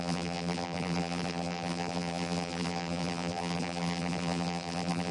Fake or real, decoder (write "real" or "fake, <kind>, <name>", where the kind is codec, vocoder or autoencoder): fake, vocoder, BigVGAN v2